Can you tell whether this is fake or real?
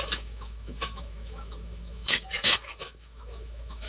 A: fake